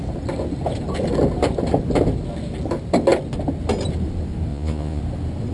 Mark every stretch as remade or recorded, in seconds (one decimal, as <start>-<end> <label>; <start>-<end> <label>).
0.0-4.5 recorded; 4.5-5.0 remade; 5.0-5.5 recorded